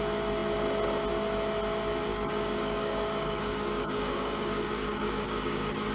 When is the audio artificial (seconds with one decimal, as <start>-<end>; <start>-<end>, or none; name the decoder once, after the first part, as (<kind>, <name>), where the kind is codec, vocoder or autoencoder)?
2.1-5.9 (codec, DAC)